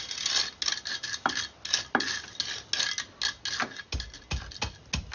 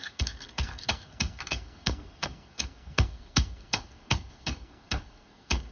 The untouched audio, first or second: first